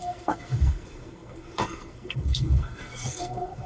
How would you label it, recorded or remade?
remade